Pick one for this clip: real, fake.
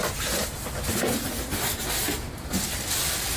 real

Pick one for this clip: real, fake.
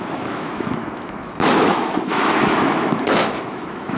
fake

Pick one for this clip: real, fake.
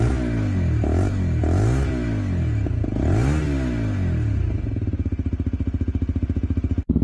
real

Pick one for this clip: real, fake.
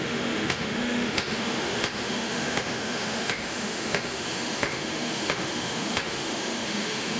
fake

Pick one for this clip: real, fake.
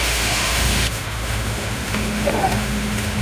fake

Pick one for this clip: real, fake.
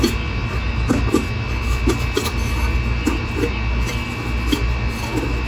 real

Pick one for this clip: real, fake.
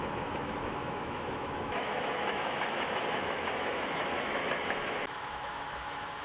fake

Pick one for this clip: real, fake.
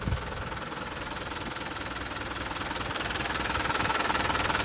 real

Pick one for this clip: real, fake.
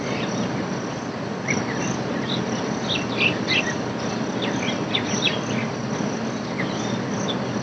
real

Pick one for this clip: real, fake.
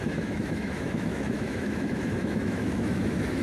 fake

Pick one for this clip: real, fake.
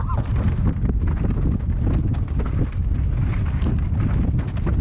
real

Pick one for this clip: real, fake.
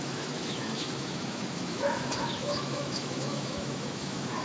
fake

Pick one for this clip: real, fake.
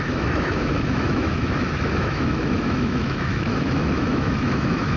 fake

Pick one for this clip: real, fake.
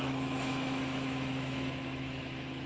fake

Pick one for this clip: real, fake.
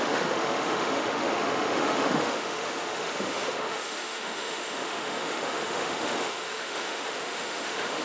fake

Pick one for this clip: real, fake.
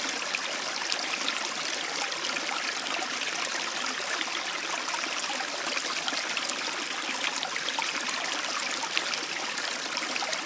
real